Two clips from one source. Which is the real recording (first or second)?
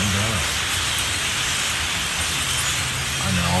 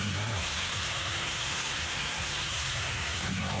first